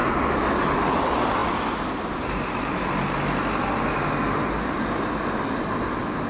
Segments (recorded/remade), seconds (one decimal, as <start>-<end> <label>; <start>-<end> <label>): 0.0-6.3 recorded